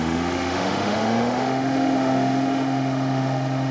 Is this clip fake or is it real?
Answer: fake